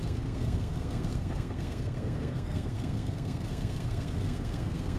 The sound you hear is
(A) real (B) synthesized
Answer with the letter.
B